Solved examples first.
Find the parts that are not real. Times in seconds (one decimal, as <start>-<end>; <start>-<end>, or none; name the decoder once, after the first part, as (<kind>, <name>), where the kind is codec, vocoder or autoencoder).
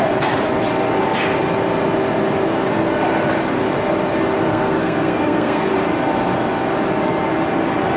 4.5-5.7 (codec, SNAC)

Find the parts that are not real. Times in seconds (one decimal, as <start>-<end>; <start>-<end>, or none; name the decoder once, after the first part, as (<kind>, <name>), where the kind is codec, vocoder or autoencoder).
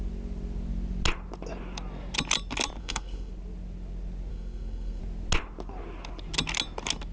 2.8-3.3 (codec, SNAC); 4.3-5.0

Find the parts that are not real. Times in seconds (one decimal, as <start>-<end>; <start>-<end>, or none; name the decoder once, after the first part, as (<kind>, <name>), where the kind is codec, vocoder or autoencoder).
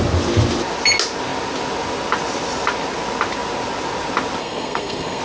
4.4-5.2 (codec, SNAC)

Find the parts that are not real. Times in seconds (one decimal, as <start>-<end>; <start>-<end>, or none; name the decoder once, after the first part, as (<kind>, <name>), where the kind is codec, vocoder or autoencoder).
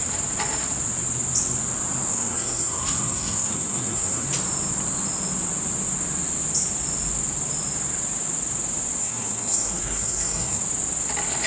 2.1-4.3 (codec, SNAC); 9.0-10.6